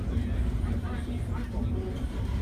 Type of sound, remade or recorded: recorded